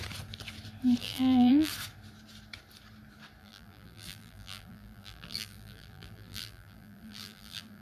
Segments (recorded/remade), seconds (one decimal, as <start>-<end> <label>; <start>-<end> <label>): 0.0-1.0 recorded; 1.0-1.7 remade; 1.7-3.4 recorded; 3.4-7.8 remade